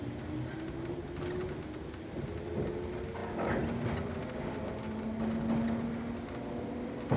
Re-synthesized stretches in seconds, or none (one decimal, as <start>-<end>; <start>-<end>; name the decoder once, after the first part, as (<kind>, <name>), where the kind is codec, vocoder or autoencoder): none